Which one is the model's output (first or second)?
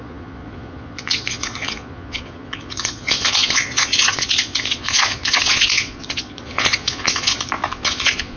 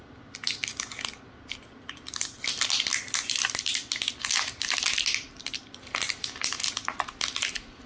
first